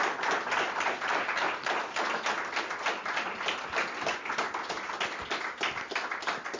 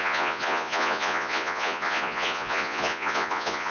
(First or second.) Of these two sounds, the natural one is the first